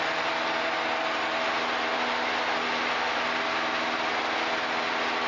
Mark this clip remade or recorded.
recorded